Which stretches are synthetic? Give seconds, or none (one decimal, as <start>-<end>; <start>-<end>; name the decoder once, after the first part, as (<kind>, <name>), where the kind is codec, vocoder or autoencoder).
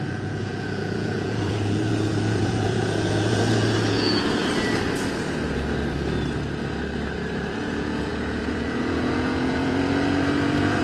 0.0-4.4 (vocoder, Vocos); 7.6-10.8